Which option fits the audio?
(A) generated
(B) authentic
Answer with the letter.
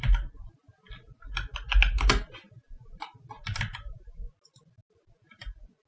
B